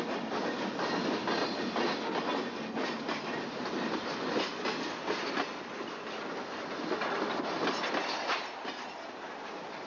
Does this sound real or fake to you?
real